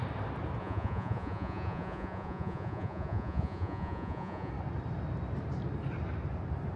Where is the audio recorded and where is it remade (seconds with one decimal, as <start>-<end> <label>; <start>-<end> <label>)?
0.0-0.6 recorded; 0.6-4.5 remade; 4.5-6.8 recorded